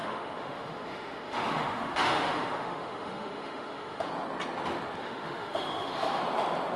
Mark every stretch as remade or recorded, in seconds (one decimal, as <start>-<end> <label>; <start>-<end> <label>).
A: 0.0-4.1 remade; 4.1-5.0 recorded; 5.0-6.2 remade; 6.2-6.8 recorded